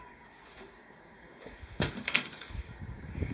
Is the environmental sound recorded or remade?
remade